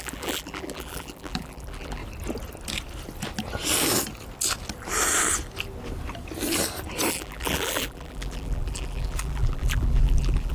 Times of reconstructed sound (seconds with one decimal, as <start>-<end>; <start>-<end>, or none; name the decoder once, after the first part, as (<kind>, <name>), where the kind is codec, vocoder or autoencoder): 0.0-2.0 (vocoder, BigVGAN v2); 7.1-10.5